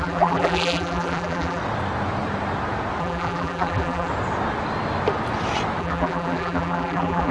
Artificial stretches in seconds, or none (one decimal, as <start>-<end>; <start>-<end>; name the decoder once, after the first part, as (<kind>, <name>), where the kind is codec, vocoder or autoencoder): 0.0-1.6 (vocoder, BigVGAN v2); 3.0-4.1; 5.8-7.3